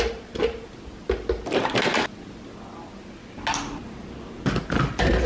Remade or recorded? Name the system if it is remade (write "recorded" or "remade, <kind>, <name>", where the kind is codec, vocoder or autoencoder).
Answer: recorded